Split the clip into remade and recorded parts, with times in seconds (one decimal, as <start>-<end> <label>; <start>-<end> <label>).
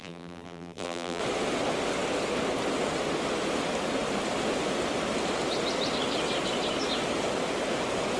0.0-1.2 remade; 1.2-8.2 recorded